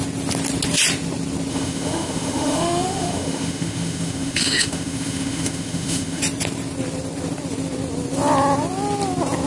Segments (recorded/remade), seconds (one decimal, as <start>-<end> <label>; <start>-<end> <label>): 0.0-1.5 recorded; 1.5-6.2 remade; 6.2-9.5 recorded